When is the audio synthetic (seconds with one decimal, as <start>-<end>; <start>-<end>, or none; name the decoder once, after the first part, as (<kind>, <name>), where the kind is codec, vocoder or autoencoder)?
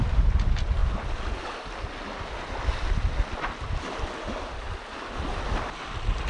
none